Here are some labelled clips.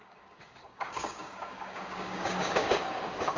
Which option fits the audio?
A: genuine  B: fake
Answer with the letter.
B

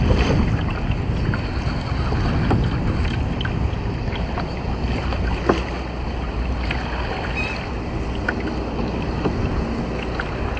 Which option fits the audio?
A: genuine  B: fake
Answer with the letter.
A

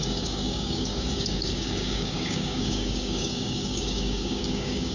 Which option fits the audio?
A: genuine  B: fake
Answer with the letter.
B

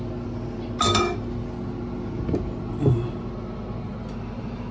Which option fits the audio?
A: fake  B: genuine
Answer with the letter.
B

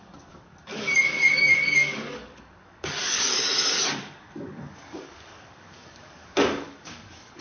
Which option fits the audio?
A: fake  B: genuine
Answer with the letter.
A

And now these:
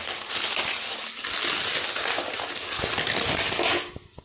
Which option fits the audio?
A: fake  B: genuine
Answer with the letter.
B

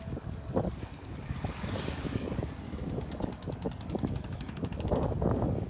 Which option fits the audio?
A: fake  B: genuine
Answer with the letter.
A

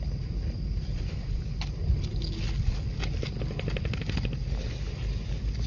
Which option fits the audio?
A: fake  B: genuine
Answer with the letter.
B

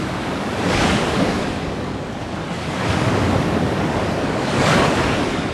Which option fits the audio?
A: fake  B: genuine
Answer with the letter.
A